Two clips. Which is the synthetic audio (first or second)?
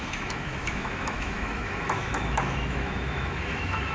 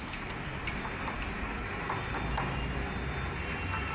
first